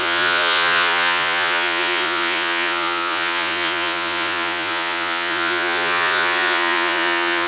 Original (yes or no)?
no